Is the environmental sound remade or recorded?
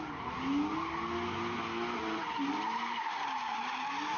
recorded